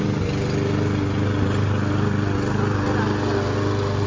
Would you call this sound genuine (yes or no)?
yes